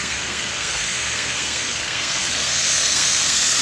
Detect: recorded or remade remade